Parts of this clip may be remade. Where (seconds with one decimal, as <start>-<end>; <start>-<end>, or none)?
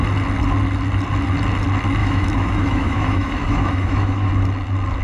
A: 2.0-4.3